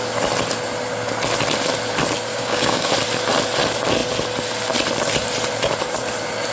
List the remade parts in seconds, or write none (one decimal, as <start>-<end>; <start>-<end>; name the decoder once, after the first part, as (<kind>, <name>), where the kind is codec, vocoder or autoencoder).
2.3-2.9 (codec, DAC)